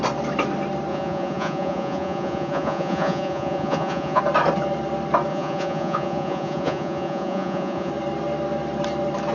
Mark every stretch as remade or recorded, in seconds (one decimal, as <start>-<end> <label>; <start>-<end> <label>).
0.0-0.9 recorded; 0.9-4.2 remade; 4.2-5.3 recorded; 5.3-7.9 remade; 7.9-9.3 recorded

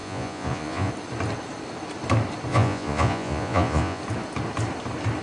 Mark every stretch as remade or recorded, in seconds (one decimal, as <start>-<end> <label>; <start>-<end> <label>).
0.0-0.9 remade; 0.9-2.5 recorded; 2.5-4.0 remade; 4.0-5.2 recorded